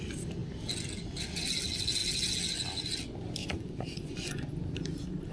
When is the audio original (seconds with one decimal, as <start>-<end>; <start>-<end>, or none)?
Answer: 0.0-3.4; 4.5-5.3